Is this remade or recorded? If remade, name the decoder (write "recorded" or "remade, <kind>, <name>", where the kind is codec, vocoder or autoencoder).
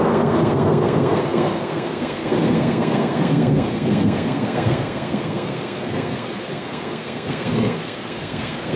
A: remade, codec, SNAC